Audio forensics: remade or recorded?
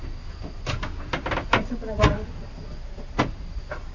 recorded